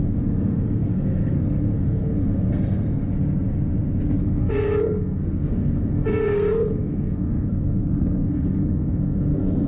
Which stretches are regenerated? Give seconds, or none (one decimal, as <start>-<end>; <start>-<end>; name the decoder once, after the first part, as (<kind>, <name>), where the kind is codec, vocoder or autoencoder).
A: 0.0-3.1 (codec, SNAC); 4.2-9.7